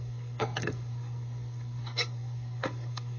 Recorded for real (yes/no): no